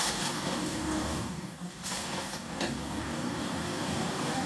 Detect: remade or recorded remade